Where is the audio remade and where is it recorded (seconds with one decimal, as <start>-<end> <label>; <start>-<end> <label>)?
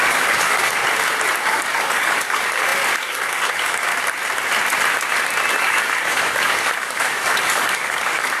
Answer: 0.0-0.8 remade; 0.8-1.4 recorded; 1.4-3.9 remade; 3.9-5.6 recorded; 5.6-8.4 remade